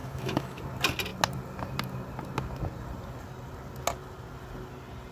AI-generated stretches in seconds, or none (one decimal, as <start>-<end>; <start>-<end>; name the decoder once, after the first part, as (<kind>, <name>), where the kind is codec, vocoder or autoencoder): 0.0-0.6 (autoencoder, DAC-VAE)